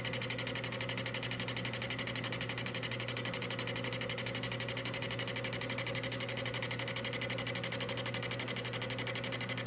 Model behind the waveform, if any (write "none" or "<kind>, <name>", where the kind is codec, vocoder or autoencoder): none